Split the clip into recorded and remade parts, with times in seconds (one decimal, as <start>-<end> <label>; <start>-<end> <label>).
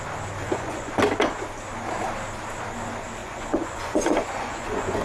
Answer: 0.0-0.4 recorded; 0.4-0.9 remade; 0.9-3.2 recorded; 3.2-5.0 remade